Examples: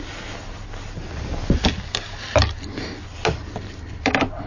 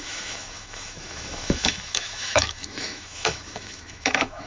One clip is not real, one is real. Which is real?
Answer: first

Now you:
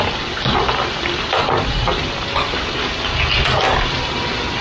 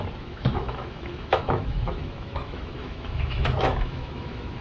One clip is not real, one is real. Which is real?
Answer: first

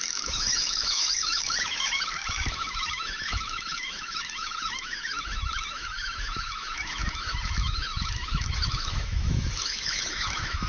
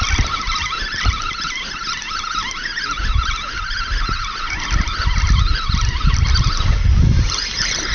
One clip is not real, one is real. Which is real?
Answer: second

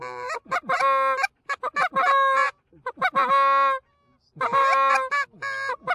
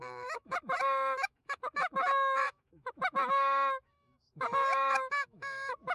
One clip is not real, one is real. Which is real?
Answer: first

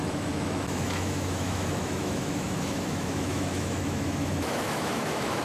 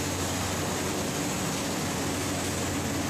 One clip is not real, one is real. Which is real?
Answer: second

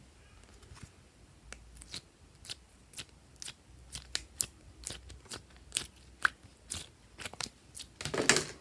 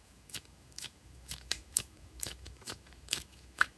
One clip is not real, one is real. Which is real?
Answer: first